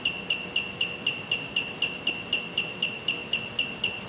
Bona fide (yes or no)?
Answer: yes